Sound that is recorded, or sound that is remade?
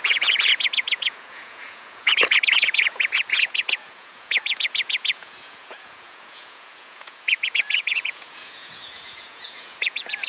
remade